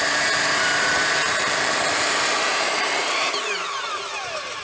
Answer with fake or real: fake